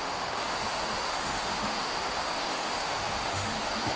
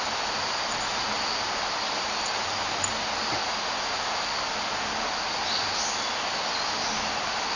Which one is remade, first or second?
first